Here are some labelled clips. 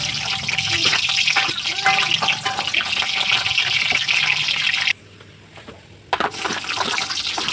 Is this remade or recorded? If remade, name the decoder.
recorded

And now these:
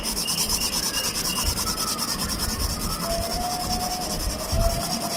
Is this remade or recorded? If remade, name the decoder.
recorded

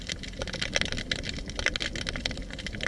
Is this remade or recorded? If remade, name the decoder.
recorded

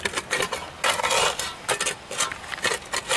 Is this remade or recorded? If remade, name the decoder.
recorded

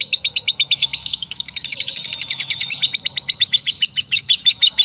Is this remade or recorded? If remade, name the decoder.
remade, autoencoder, DAC-VAE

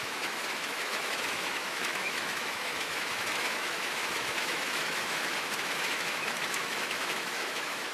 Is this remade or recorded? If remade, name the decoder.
remade, autoencoder, DAC-VAE